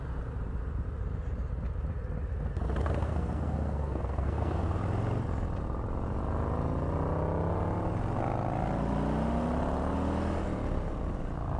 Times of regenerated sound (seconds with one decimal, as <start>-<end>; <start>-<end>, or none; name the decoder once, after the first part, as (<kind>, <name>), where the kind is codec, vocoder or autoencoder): 2.8-4.8 (codec, SNAC)